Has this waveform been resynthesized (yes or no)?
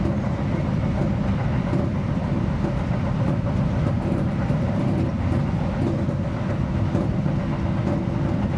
no